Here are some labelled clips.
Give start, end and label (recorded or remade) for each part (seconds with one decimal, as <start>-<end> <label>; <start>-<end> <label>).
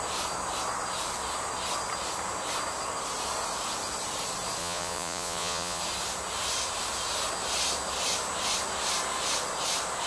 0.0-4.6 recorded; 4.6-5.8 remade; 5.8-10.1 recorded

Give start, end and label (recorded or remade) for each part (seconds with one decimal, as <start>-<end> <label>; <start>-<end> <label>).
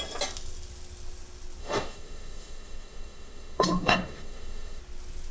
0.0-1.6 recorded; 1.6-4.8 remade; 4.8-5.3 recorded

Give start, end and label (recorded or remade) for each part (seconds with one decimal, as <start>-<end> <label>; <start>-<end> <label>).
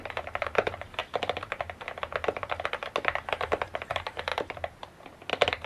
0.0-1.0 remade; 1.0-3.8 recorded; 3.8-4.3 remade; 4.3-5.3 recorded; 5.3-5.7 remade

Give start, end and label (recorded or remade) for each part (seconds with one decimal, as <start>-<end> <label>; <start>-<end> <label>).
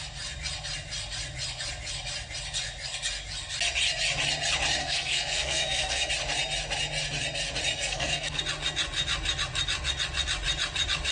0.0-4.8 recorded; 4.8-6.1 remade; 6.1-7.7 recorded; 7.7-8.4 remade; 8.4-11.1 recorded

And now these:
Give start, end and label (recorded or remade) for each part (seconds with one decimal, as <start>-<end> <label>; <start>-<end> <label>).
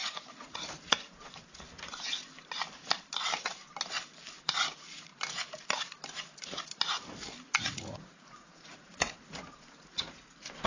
0.0-1.4 remade; 1.4-4.4 recorded; 4.4-5.1 remade; 5.1-7.5 recorded; 7.5-10.7 remade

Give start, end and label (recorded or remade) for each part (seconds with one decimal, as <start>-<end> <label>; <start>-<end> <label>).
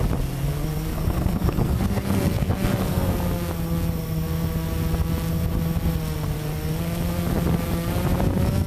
0.0-0.9 recorded; 0.9-3.1 remade; 3.1-8.7 recorded